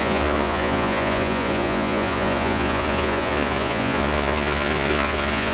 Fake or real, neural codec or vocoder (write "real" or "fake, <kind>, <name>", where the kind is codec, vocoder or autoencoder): fake, vocoder, Vocos